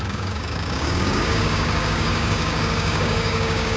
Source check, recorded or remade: remade